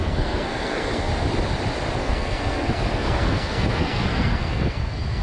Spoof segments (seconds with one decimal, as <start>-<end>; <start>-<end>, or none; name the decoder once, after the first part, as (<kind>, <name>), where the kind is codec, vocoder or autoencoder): 0.0-1.1 (codec, SNAC); 2.0-5.2